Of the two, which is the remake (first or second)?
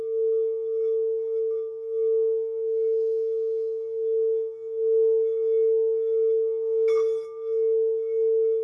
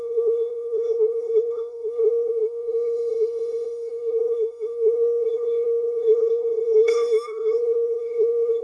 second